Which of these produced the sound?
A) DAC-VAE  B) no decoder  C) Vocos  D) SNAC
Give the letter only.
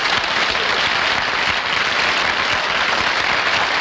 B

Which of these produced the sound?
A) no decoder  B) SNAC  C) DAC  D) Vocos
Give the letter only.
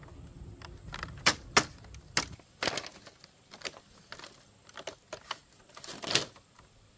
A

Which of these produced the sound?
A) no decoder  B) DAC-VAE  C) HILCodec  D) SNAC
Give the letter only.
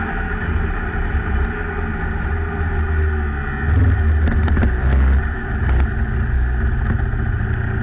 A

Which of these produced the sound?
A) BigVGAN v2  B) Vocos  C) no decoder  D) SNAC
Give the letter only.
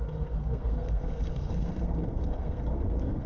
D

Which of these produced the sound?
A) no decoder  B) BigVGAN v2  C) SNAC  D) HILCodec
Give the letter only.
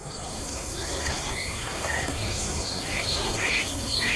C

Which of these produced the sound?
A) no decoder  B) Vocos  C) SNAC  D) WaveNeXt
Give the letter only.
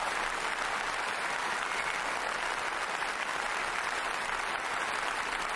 A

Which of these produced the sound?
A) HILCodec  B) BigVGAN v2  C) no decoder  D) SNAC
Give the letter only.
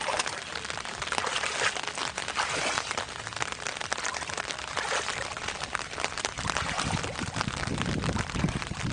C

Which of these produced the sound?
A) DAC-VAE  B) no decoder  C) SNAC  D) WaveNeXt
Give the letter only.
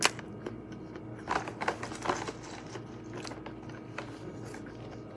B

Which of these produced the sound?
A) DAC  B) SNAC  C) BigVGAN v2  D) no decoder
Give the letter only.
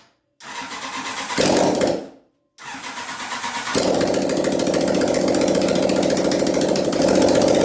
D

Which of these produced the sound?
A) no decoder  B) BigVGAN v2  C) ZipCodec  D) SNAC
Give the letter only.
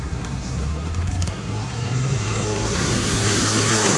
D